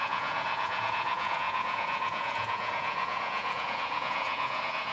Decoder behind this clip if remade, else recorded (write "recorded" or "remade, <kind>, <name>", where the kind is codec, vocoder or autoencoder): remade, vocoder, Vocos